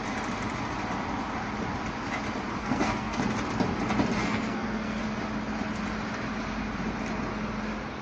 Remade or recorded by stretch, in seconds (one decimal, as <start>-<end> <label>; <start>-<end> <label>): 0.0-2.6 recorded; 2.6-3.2 remade; 3.2-4.2 recorded; 4.2-5.0 remade; 5.0-8.0 recorded